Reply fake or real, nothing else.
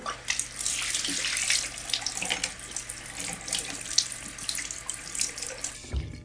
real